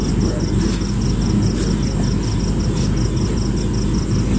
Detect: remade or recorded recorded